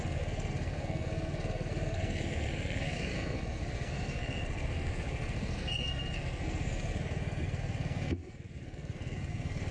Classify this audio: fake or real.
fake